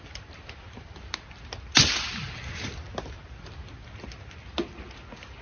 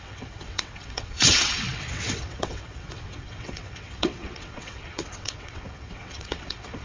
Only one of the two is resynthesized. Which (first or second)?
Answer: second